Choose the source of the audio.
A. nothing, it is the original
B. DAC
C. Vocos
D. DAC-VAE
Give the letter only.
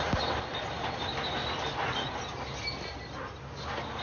A